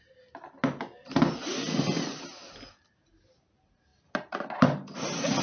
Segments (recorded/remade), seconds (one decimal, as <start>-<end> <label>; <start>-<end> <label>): 0.0-5.4 recorded